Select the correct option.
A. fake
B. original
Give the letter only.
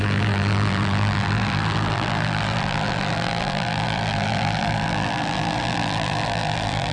A